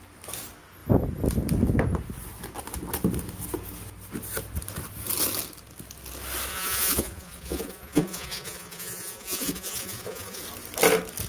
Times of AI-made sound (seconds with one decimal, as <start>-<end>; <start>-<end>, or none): 6.5-10.4